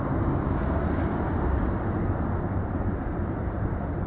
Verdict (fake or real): real